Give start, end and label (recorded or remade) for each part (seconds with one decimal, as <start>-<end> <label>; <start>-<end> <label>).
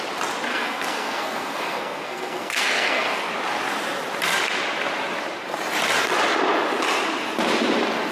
0.0-0.5 recorded; 0.5-3.3 remade; 3.3-8.1 recorded